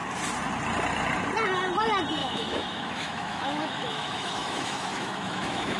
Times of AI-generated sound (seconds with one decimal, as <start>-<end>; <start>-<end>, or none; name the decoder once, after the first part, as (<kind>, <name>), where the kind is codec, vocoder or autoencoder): 2.2-5.8 (autoencoder, DAC-VAE)